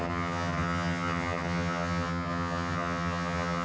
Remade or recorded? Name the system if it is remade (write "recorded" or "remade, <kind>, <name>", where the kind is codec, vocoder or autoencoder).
remade, vocoder, HiFi-GAN